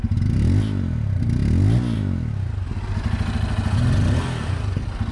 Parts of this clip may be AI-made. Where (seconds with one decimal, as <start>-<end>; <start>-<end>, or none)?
none